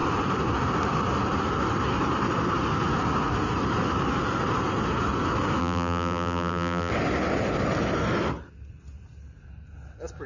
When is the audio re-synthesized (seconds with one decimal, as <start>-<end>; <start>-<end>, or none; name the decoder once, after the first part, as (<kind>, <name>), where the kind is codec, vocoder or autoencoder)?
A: 5.6-6.9 (vocoder, BigVGAN v2)